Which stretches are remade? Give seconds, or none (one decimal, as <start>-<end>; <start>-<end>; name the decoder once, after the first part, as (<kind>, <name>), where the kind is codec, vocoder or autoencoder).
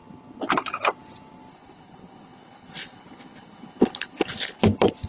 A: 1.5-4.6 (codec, HILCodec)